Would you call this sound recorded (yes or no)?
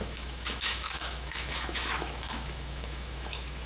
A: no